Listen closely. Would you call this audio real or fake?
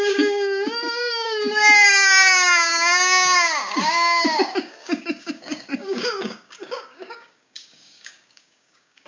fake